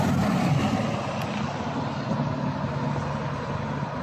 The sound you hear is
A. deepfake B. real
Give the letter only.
B